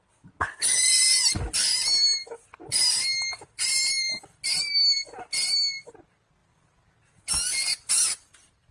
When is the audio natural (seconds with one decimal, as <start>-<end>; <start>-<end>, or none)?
0.0-8.7